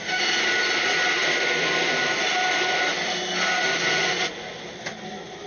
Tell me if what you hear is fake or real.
real